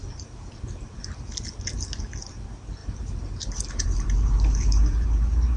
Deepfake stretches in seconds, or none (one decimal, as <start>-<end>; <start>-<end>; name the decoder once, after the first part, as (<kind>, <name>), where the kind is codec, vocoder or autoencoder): 2.8-5.1 (vocoder, BigVGAN v2)